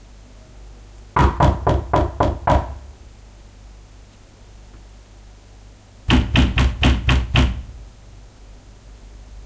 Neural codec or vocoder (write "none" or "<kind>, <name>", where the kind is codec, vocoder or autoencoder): none